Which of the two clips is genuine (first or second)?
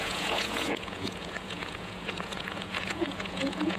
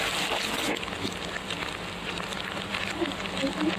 second